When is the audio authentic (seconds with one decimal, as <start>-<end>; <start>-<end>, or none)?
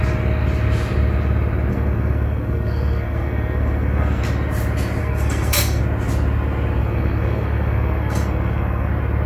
0.0-1.7; 4.2-5.0; 5.8-6.8; 8.9-9.3